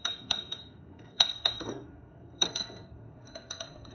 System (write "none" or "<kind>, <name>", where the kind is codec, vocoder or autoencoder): codec, SNAC